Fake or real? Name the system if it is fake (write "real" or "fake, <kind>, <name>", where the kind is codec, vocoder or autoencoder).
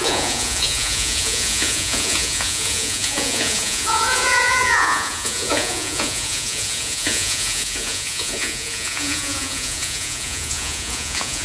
fake, vocoder, Vocos